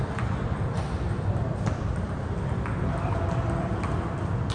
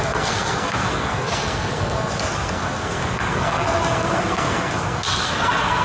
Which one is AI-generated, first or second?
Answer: second